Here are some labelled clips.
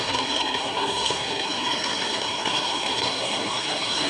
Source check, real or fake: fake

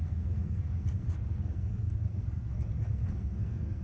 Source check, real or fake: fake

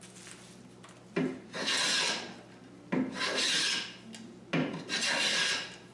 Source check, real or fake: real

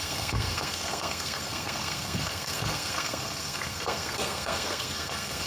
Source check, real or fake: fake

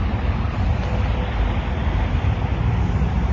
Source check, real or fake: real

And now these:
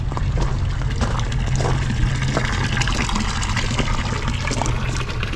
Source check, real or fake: real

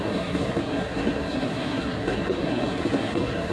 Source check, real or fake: fake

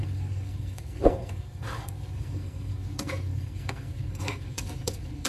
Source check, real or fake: fake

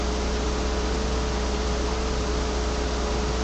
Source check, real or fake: real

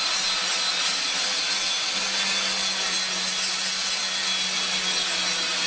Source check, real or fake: real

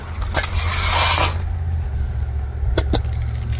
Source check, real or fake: real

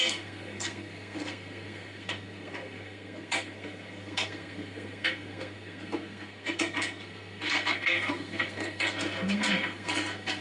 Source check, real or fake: fake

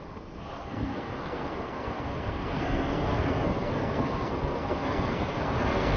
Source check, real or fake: fake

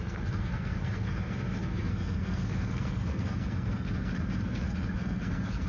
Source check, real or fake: fake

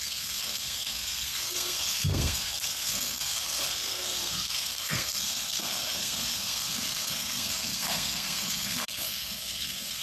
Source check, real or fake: fake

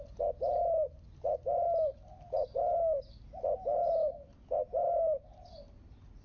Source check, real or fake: real